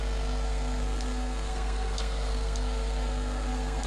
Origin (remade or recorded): remade